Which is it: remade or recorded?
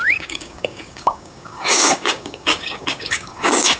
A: remade